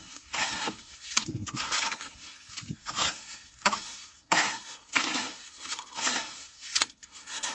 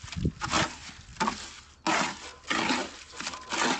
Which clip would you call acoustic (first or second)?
second